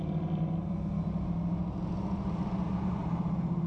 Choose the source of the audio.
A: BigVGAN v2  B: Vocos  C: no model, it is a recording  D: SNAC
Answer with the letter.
C